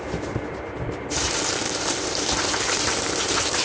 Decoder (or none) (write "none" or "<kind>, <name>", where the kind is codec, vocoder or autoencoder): vocoder, BigVGAN v2